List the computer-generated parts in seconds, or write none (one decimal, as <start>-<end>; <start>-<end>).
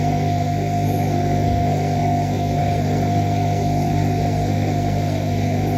0.0-5.8